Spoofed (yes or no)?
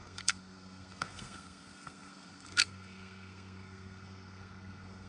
yes